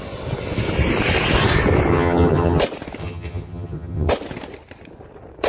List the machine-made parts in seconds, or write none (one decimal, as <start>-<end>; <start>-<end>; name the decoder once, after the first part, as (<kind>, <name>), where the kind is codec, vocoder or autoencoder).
1.9-2.6 (vocoder, HiFi-GAN); 3.0-4.1